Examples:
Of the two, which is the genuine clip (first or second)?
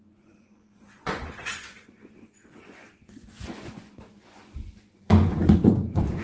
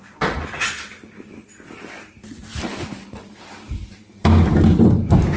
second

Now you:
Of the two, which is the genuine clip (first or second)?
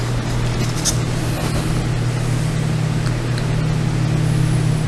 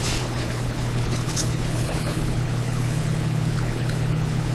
first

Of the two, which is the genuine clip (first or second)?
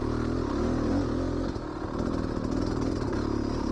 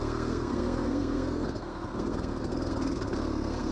first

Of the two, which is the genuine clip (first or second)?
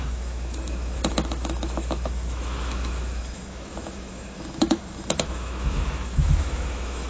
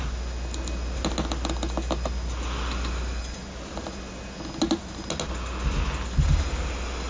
second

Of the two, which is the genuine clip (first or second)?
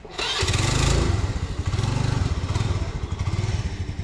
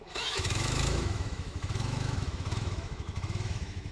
first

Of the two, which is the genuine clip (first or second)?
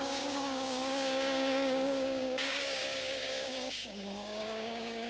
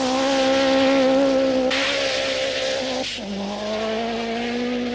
second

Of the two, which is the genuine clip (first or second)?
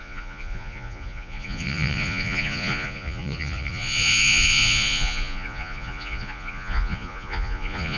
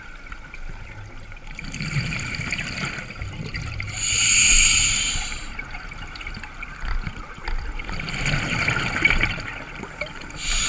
second